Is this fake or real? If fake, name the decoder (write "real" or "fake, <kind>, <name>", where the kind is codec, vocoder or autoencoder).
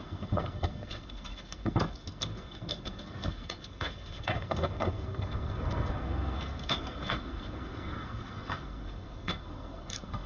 fake, codec, SNAC